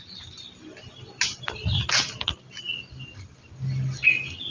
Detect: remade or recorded recorded